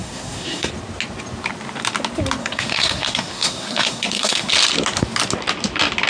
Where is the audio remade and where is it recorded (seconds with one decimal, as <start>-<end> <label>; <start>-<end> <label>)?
0.0-0.7 remade; 0.7-2.4 recorded; 2.4-4.5 remade; 4.5-6.1 recorded